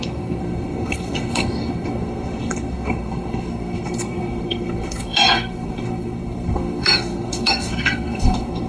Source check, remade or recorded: remade